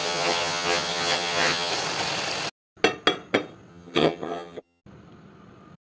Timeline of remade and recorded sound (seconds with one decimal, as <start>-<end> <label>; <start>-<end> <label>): 0.0-1.7 remade; 1.7-3.7 recorded; 3.7-4.8 remade; 4.8-5.9 recorded